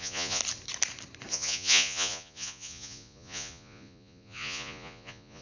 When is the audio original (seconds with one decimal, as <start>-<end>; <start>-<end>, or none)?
0.4-1.3